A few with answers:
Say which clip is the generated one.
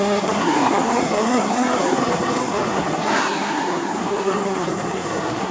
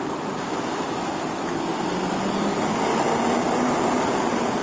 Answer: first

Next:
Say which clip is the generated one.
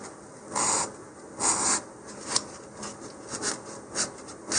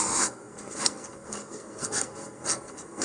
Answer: second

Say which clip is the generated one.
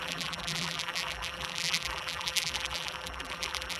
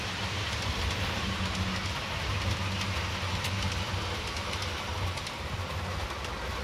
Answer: first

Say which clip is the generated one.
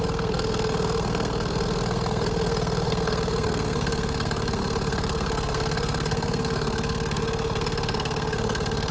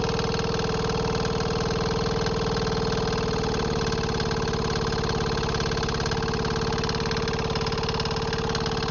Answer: first